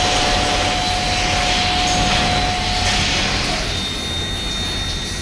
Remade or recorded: recorded